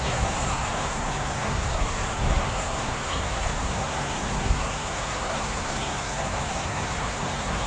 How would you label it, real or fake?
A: fake